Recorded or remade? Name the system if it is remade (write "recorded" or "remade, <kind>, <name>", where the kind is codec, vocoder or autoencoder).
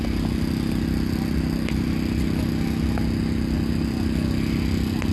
recorded